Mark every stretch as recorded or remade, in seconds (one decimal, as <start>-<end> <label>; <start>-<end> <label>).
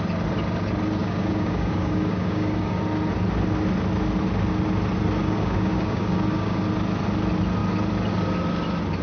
0.0-1.0 recorded; 1.0-2.8 remade; 2.8-5.2 recorded; 5.2-6.6 remade; 6.6-9.0 recorded